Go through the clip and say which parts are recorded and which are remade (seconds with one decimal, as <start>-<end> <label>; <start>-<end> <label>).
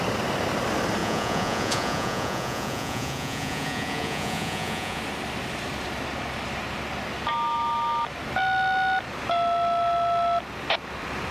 0.0-1.0 recorded; 1.0-5.0 remade; 5.0-11.3 recorded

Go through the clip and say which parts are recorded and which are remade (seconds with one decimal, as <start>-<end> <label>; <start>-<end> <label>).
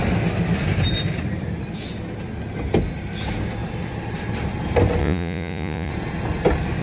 0.0-5.0 recorded; 5.0-5.9 remade; 5.9-6.8 recorded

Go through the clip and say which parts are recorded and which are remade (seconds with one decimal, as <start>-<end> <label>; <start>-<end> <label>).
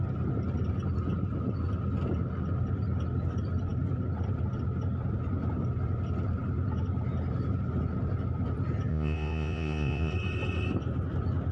0.0-8.9 recorded; 8.9-10.1 remade; 10.1-11.5 recorded